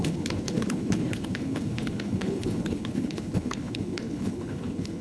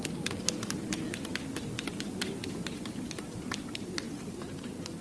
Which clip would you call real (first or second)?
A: second